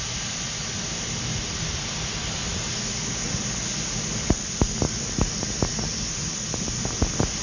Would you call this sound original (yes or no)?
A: yes